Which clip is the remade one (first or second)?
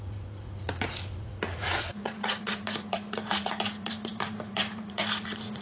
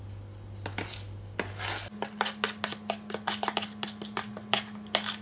first